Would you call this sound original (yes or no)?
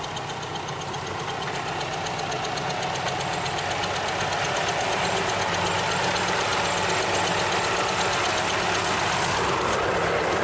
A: yes